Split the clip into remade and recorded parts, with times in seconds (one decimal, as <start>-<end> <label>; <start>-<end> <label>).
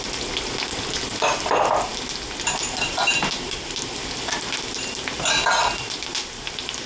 0.0-6.9 recorded